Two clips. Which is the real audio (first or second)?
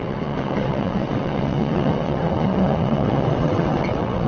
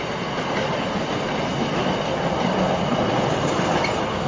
second